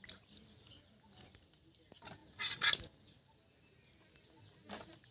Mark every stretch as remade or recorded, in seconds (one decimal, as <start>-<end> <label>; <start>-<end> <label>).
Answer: 0.0-5.1 recorded

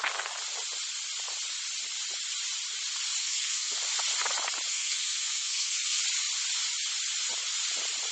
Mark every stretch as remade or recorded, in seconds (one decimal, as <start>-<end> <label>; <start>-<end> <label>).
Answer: 0.0-3.2 recorded; 3.2-3.8 remade; 3.8-4.7 recorded; 4.7-6.0 remade; 6.0-8.1 recorded